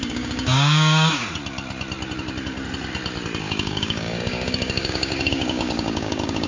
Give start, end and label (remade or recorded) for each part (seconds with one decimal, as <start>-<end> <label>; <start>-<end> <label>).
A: 0.0-1.2 remade; 1.2-3.4 recorded; 3.4-6.5 remade